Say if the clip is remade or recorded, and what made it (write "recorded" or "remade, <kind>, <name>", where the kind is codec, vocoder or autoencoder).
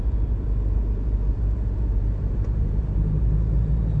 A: remade, vocoder, BigVGAN v2